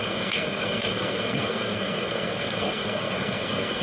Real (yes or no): no